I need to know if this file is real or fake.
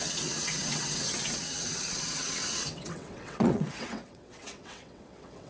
fake